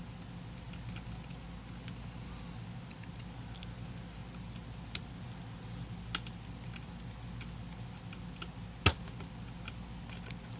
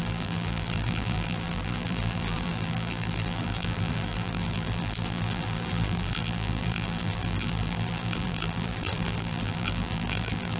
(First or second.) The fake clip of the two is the second